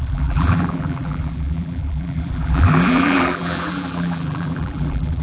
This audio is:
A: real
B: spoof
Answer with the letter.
B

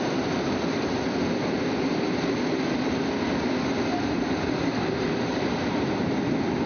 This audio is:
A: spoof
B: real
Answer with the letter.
B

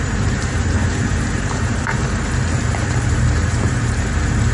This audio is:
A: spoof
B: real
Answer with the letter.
A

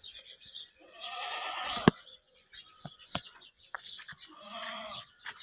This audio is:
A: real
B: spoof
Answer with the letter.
B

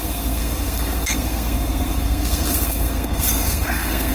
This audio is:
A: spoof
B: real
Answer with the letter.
A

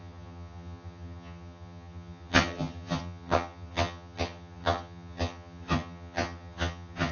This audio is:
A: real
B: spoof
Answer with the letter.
B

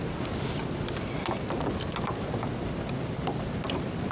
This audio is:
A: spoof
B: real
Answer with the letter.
B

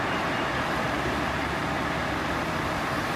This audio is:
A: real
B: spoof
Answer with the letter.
B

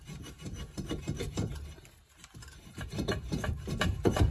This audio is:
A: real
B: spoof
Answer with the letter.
B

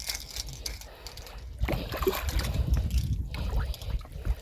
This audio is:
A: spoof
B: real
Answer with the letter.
B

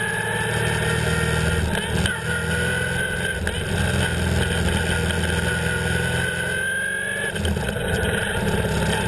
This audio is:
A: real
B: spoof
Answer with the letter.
A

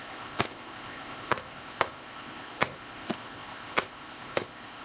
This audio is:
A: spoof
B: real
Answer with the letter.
A